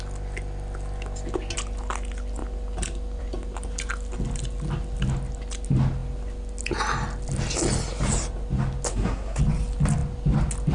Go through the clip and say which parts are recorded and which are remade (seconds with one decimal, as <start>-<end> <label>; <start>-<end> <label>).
0.0-8.9 recorded; 8.9-9.4 remade; 9.4-10.7 recorded